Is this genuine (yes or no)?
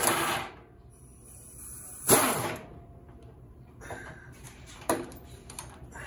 no